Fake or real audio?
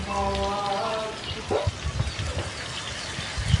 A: real